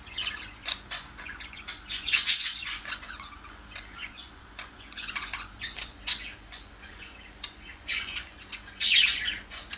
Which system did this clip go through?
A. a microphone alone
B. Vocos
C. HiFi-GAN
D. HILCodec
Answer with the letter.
B